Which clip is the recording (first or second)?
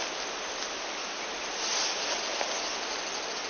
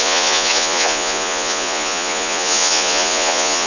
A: first